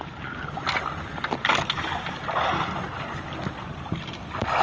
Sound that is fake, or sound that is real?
real